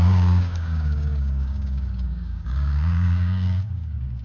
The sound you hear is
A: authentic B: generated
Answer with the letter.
B